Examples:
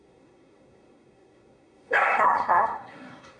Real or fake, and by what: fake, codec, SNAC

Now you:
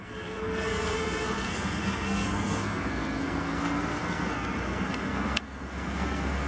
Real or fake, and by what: fake, codec, SNAC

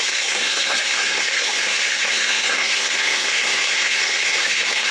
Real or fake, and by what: fake, codec, SNAC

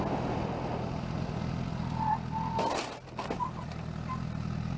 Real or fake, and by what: real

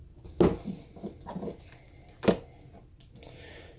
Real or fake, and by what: real